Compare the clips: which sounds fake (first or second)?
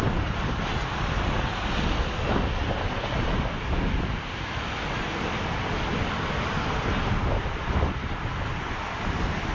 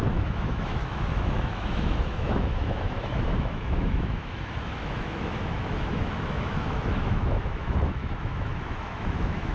second